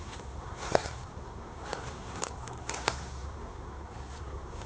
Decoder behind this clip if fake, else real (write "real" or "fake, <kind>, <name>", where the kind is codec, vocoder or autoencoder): fake, codec, SNAC